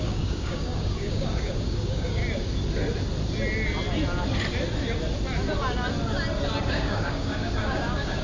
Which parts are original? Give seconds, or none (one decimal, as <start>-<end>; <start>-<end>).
2.2-6.7